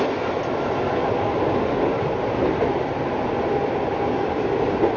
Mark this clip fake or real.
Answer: real